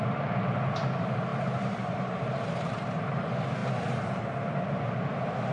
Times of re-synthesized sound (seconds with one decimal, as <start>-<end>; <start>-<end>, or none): 1.3-3.0; 3.6-4.2